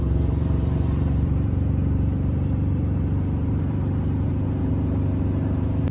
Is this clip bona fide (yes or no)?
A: no